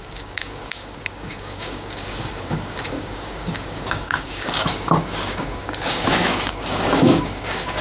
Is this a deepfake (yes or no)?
yes